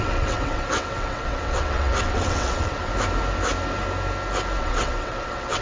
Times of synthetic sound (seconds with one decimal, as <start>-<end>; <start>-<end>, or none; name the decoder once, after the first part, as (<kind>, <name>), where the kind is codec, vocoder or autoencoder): 0.0-2.9 (vocoder, WaveNeXt); 4.6-5.6